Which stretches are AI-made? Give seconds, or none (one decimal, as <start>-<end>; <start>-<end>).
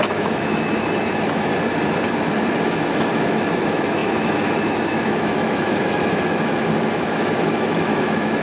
0.0-1.5; 2.5-8.4